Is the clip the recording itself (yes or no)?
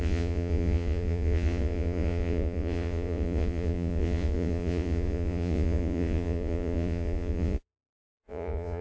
no